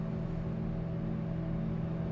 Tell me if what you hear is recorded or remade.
recorded